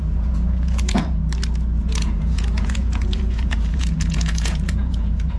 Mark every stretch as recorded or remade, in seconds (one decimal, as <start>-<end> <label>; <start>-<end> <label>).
0.0-1.2 remade; 1.2-1.8 recorded; 1.8-5.4 remade